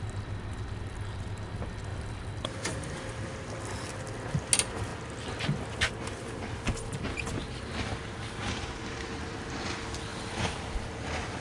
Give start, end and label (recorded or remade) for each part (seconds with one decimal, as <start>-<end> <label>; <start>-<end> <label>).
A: 0.0-1.9 recorded; 1.9-3.3 remade; 3.3-7.4 recorded; 7.4-8.5 remade; 8.5-10.1 recorded; 10.1-10.6 remade; 10.6-11.4 recorded